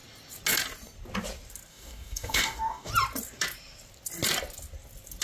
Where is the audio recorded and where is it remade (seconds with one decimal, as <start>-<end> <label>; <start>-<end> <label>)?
0.0-1.7 recorded; 1.7-2.9 remade; 2.9-5.2 recorded